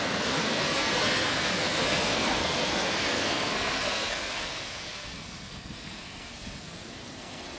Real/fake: fake